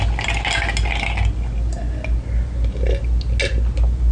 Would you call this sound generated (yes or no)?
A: no